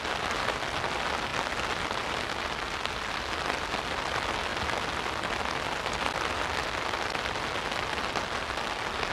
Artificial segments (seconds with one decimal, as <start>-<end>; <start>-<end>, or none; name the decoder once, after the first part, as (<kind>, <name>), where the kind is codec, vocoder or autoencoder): none